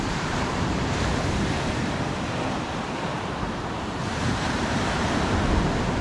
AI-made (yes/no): yes